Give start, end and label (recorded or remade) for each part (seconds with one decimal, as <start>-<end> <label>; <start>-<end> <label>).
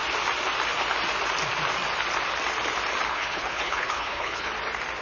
0.0-3.1 recorded; 3.1-4.5 remade; 4.5-5.0 recorded